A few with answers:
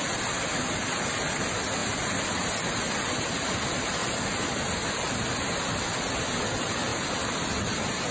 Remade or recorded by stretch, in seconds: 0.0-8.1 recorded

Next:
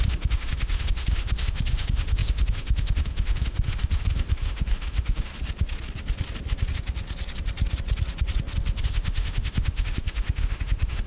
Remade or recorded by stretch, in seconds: 0.0-5.3 remade; 5.3-8.8 recorded; 8.8-11.1 remade

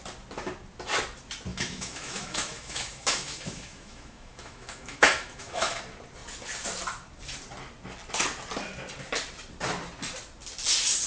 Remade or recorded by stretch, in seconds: 0.0-1.5 recorded; 1.5-5.8 remade; 5.8-11.1 recorded

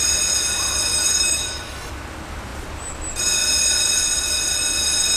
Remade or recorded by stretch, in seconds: 0.0-0.9 recorded; 0.9-1.9 remade; 1.9-5.2 recorded